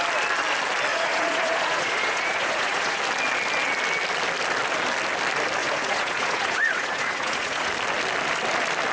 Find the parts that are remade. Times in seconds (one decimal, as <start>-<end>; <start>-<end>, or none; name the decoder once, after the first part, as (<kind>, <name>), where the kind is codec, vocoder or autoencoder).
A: 0.9-3.0 (vocoder, Vocos); 5.6-7.7